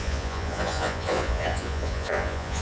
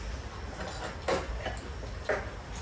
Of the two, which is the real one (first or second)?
second